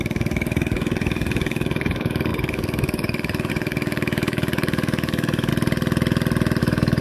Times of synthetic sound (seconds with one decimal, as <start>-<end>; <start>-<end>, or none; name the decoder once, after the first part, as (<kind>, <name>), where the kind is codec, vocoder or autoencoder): 0.0-5.5 (codec, DAC); 6.6-7.0